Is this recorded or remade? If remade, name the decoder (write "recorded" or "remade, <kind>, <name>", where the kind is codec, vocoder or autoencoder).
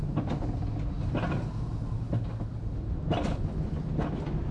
recorded